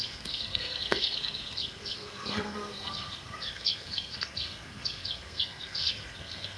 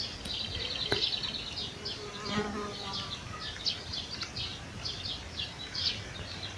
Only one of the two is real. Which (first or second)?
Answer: second